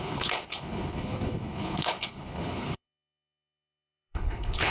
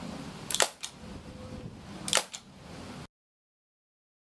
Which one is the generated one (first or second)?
first